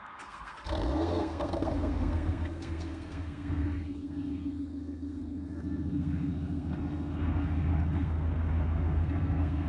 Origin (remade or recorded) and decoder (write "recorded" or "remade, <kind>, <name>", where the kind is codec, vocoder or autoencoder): remade, codec, SNAC